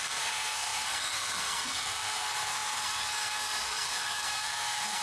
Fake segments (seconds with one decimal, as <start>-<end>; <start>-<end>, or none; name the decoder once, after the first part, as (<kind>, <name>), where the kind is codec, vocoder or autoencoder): 0.0-5.0 (codec, SNAC)

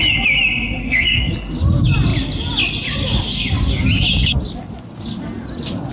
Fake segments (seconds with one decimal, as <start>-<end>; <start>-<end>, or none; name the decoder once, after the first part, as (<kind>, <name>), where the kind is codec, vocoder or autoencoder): 0.8-1.3 (codec, SNAC)